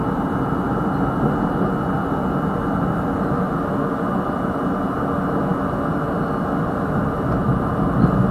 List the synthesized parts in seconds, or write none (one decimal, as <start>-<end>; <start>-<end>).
none

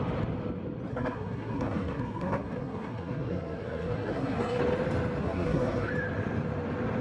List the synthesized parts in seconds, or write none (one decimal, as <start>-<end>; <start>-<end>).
0.9-4.6; 5.2-5.9

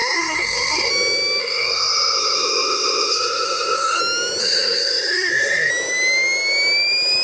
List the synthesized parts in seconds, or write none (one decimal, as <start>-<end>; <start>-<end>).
0.0-0.9; 1.4-4.0; 4.4-5.7

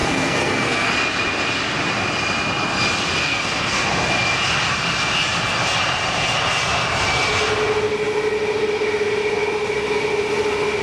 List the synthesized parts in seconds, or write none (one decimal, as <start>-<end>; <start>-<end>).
0.0-0.9; 3.2-3.9

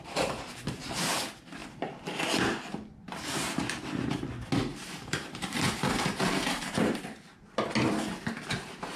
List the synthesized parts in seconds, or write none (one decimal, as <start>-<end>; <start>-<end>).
4.7-7.2

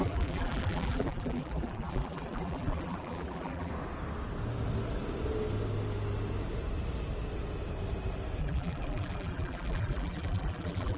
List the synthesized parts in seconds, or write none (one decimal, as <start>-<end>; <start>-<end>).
0.0-3.7; 8.4-11.0

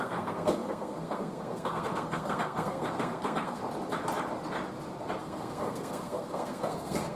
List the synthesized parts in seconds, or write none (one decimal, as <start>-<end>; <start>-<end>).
0.0-3.6; 5.2-7.2

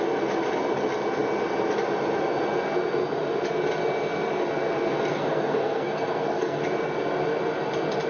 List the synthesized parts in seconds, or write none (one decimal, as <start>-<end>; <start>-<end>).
5.1-6.6